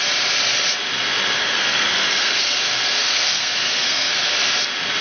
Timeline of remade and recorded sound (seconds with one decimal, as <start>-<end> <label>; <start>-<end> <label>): 0.0-1.4 recorded; 1.4-2.4 remade; 2.4-3.0 recorded; 3.0-4.1 remade; 4.1-5.0 recorded